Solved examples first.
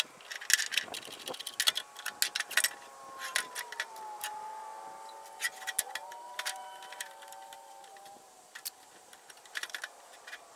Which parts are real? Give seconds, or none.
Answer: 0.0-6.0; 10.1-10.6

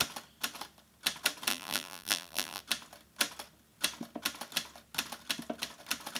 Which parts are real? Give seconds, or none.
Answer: 0.0-1.5; 2.6-6.2

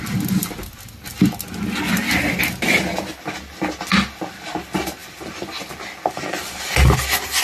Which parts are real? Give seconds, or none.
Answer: 0.0-7.4

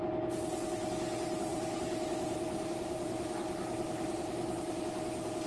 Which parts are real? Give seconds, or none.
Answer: 0.0-1.5; 4.8-5.5

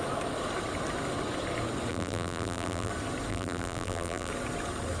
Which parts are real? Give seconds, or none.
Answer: 0.0-1.9; 2.9-3.3; 4.3-5.0